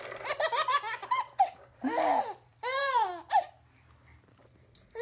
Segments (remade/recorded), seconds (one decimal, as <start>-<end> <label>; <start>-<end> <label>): 0.0-1.0 recorded; 1.0-2.0 remade; 2.0-2.5 recorded; 2.5-3.1 remade; 3.1-5.0 recorded